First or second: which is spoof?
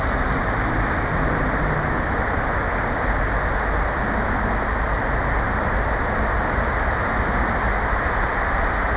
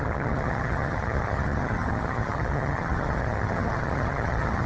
second